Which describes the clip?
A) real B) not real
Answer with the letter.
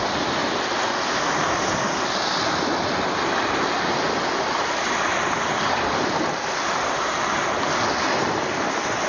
A